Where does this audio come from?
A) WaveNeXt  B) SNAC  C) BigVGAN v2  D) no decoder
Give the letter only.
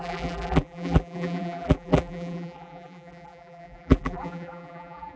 C